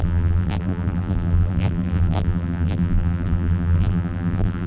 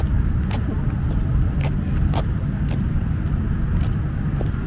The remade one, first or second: first